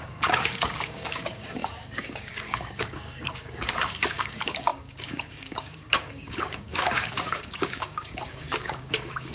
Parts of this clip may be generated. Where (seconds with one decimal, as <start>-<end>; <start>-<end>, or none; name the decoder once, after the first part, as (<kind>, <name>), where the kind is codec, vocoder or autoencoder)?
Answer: 0.0-9.3 (codec, DAC)